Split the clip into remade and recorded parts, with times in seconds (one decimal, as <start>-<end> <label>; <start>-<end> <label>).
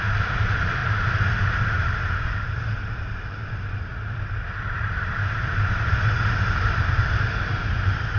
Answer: 0.0-3.9 remade; 3.9-4.8 recorded; 4.8-8.2 remade